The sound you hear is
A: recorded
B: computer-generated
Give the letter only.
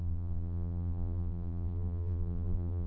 B